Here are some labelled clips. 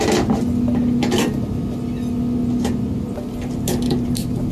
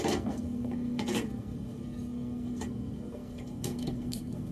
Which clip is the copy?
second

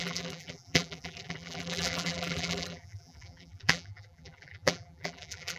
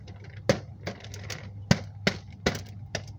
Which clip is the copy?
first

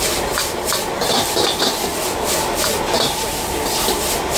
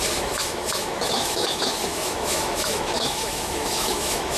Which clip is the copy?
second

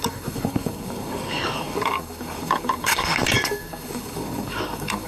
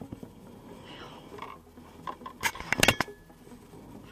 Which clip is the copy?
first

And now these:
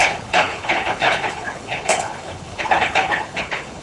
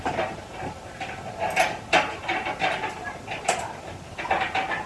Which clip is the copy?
first